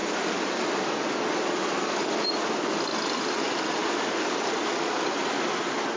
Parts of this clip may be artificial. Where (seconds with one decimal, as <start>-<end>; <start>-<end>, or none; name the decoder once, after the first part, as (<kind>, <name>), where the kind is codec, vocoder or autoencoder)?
none